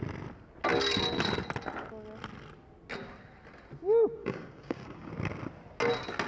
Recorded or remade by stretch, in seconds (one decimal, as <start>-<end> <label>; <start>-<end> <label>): 0.0-4.2 recorded; 4.2-5.1 remade; 5.1-6.3 recorded